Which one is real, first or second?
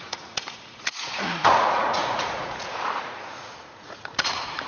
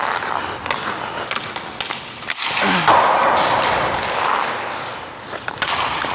second